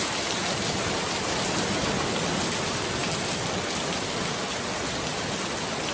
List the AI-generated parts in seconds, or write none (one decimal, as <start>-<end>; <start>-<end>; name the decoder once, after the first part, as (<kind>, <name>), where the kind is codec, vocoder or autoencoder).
none